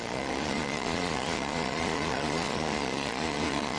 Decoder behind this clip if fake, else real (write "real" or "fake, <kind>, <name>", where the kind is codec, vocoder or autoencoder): fake, vocoder, Vocos